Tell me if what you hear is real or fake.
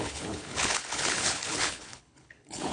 fake